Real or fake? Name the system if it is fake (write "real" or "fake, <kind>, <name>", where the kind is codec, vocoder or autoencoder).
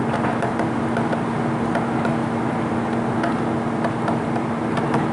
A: real